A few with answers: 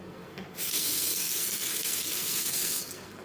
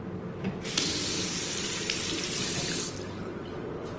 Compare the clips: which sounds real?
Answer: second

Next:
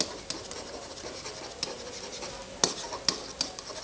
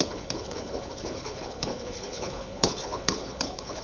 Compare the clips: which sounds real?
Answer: first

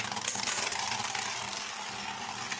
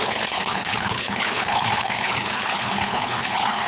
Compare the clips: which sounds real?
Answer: first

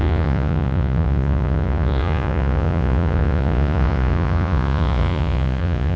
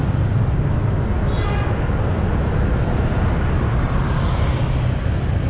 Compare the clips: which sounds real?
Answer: second